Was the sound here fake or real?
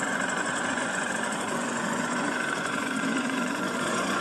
fake